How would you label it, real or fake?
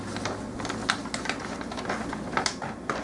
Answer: real